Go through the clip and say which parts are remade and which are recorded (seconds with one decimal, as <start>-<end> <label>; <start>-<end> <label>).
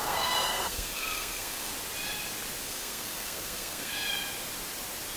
0.0-1.7 remade; 1.7-2.6 recorded; 2.6-3.9 remade; 3.9-5.2 recorded